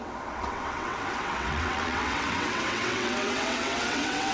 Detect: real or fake fake